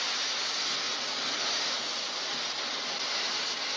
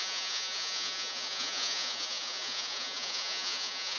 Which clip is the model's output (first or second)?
second